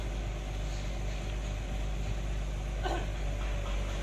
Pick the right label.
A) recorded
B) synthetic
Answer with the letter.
A